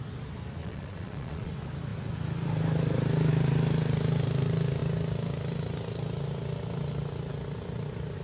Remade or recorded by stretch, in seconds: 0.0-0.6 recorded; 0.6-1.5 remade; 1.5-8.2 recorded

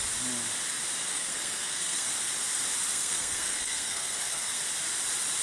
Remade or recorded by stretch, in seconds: 0.0-1.1 recorded; 1.1-2.1 remade; 2.1-2.9 recorded; 2.9-4.6 remade; 4.6-5.4 recorded

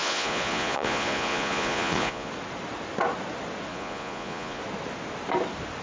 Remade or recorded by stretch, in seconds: 0.0-2.3 remade; 2.3-3.7 recorded; 3.7-4.6 remade; 4.6-5.8 recorded

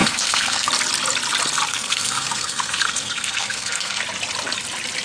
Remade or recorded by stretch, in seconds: 0.0-0.7 remade; 0.7-1.7 recorded; 1.7-4.0 remade; 4.0-5.0 recorded

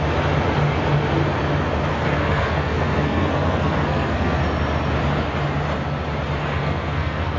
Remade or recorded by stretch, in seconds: 0.0-1.9 recorded; 1.9-4.4 remade; 4.4-6.4 recorded; 6.4-7.4 remade

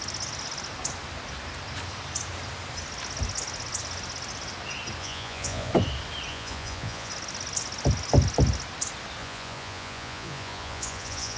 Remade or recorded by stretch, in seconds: 0.0-5.0 recorded; 5.0-5.7 remade; 5.7-6.3 recorded; 6.3-7.1 remade; 7.1-9.2 recorded; 9.2-11.4 remade

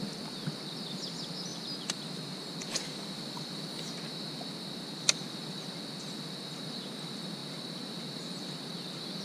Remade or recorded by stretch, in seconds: 0.0-9.2 recorded

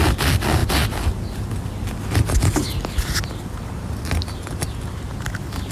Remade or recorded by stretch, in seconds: 0.0-5.7 recorded